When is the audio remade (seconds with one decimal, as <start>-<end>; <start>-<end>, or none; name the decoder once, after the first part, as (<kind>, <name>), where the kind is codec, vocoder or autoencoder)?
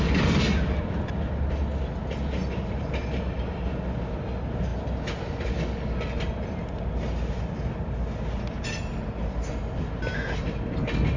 none